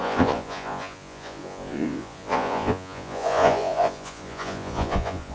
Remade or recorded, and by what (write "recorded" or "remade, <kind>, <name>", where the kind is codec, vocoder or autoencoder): remade, vocoder, Vocos